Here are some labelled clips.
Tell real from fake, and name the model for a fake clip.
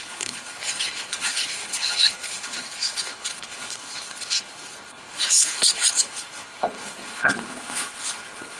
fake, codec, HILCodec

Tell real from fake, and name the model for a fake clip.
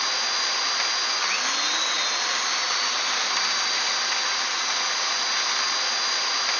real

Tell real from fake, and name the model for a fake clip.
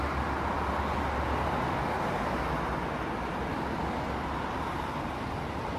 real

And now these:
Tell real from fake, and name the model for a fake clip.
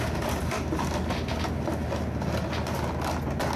real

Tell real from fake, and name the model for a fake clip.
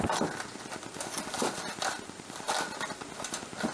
real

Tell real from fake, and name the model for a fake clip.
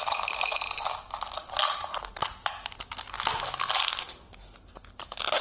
real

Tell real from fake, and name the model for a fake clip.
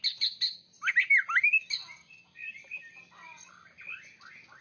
real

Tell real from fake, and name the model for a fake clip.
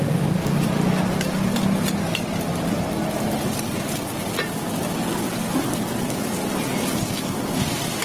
real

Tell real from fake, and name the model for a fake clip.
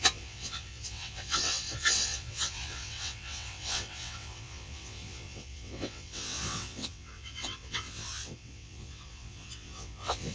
fake, vocoder, WaveNeXt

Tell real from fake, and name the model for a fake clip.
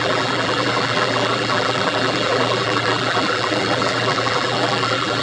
fake, vocoder, BigVGAN v2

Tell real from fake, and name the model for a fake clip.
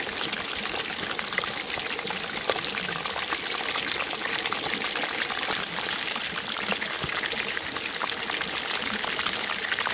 fake, vocoder, BigVGAN v2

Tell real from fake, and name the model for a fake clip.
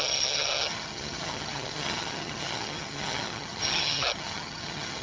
fake, vocoder, HiFi-GAN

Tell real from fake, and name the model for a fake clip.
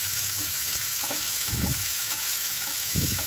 fake, autoencoder, DAC-VAE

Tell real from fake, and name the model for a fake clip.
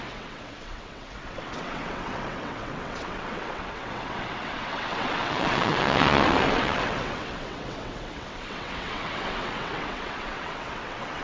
fake, vocoder, WaveNeXt